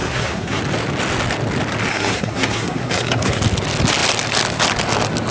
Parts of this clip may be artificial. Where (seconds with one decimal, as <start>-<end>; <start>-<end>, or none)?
0.0-0.6; 1.9-3.4